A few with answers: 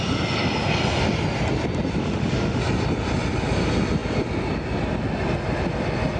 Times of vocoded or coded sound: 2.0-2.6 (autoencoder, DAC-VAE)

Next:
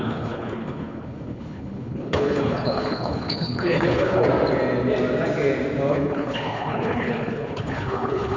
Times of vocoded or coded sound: 0.0-4.3 (codec, HILCodec); 5.9-8.4

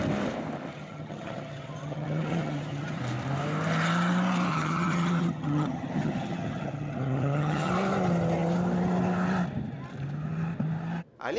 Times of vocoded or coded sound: 0.7-3.0 (vocoder, HiFi-GAN); 4.5-7.7

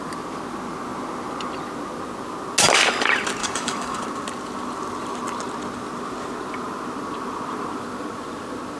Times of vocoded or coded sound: 3.4-4.0 (codec, DAC)

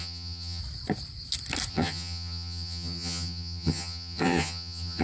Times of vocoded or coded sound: 0.0-0.6 (vocoder, HiFi-GAN); 1.7-5.0

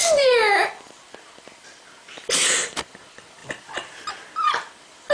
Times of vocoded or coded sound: 3.4-4.1 (vocoder, BigVGAN v2)

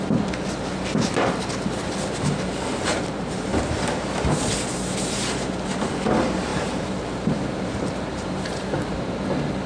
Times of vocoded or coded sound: 2.9-3.6 (vocoder, BigVGAN v2); 6.5-9.2